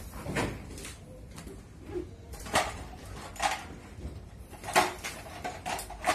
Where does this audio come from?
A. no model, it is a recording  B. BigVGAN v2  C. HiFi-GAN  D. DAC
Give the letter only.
B